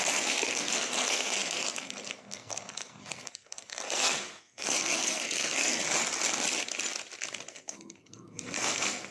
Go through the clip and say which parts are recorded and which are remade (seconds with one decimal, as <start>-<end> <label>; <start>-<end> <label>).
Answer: 0.0-5.8 remade; 5.8-7.5 recorded; 7.5-9.1 remade